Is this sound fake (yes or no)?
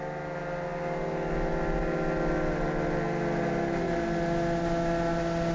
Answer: no